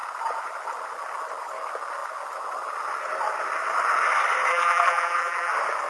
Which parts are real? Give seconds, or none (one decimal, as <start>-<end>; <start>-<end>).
0.0-4.5; 5.5-5.9